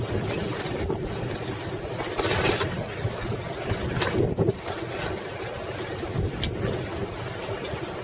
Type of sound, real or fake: real